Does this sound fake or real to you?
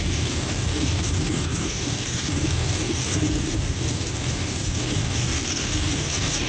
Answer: fake